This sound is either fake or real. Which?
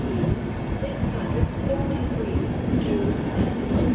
real